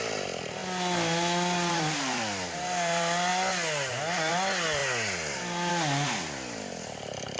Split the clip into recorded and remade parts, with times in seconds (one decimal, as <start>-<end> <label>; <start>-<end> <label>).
0.0-0.6 remade; 0.6-1.7 recorded; 1.7-3.3 remade; 3.3-4.3 recorded; 4.3-4.8 remade; 4.8-5.7 recorded; 5.7-7.4 remade

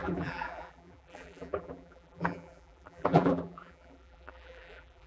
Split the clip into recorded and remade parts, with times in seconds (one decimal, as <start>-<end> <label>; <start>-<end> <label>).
0.0-5.1 remade

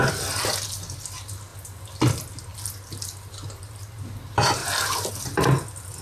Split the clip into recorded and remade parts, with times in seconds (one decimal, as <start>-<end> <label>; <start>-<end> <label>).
0.0-2.5 recorded; 2.5-3.9 remade; 3.9-4.6 recorded; 4.6-5.1 remade; 5.1-6.0 recorded

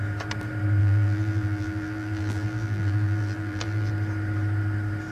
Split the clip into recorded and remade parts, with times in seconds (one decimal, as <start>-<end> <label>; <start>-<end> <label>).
0.0-0.8 recorded; 0.8-3.9 remade; 3.9-5.1 recorded

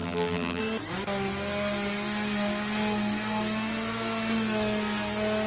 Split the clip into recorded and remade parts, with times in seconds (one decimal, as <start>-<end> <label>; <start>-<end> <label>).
0.0-0.6 remade; 0.6-5.5 recorded